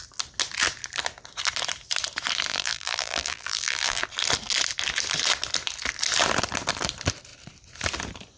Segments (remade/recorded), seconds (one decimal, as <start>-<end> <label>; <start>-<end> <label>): 0.0-2.5 recorded; 2.5-4.0 remade; 4.0-8.4 recorded